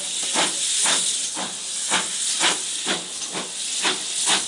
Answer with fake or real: real